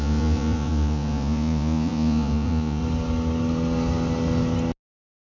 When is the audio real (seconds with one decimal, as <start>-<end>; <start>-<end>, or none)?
2.8-5.4